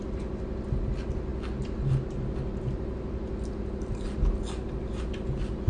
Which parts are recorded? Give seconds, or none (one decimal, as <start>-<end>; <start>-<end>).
0.0-5.7